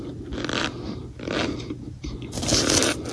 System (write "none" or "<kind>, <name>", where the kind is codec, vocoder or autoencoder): none